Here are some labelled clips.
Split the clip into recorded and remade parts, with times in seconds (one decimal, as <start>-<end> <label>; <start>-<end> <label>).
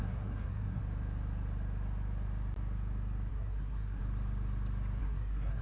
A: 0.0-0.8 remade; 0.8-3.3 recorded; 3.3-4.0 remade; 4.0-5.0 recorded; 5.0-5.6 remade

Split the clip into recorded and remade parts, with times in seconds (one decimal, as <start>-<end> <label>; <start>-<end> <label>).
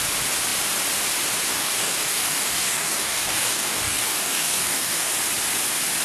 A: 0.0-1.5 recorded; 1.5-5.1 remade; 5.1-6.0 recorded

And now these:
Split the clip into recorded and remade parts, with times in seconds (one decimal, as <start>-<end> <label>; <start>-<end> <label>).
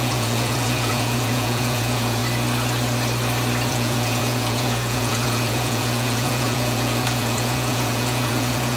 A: 0.0-2.2 remade; 2.2-3.7 recorded; 3.7-8.8 remade